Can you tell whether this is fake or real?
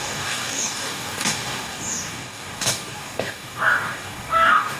fake